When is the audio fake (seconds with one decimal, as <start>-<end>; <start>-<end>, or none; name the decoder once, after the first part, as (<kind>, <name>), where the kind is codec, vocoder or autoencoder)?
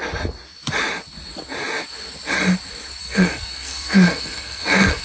3.0-5.0 (codec, SNAC)